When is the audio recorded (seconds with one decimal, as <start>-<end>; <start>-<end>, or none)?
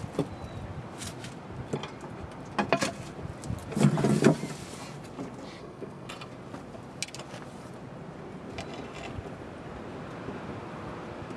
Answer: 0.0-5.6; 6.1-11.4